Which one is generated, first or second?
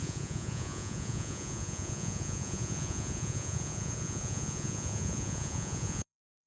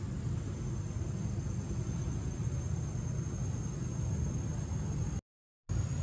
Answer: first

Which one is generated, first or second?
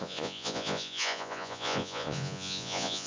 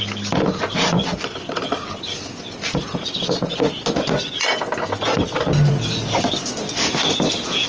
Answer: first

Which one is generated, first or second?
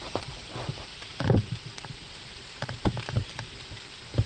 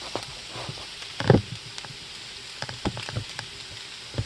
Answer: first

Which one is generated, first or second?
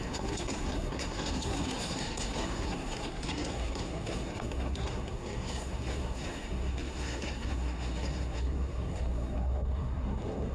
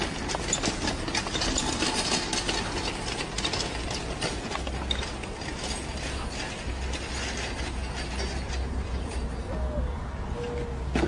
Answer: first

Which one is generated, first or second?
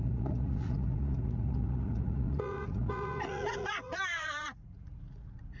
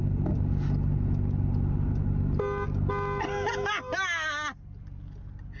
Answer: first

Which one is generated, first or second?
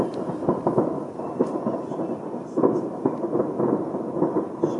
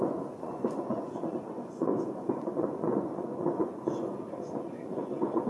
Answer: second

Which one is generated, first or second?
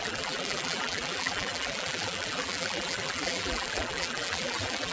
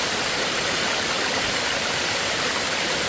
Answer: first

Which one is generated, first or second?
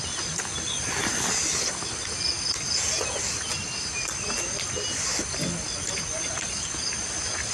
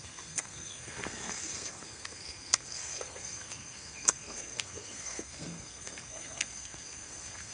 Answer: second